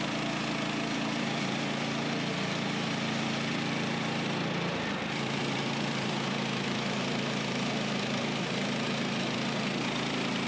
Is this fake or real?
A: fake